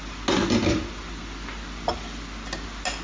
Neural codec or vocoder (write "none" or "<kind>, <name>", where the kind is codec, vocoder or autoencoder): none